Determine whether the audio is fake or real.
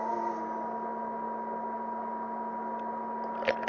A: real